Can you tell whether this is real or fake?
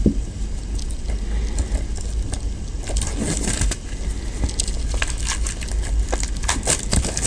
real